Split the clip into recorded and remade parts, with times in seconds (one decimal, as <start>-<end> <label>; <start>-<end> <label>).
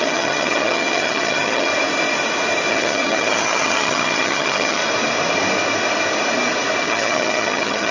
0.0-1.7 remade; 1.7-2.7 recorded; 2.7-4.8 remade; 4.8-6.8 recorded; 6.8-7.9 remade